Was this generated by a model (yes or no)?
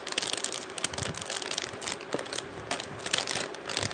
no